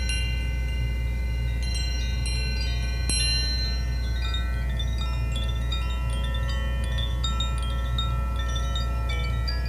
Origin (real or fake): real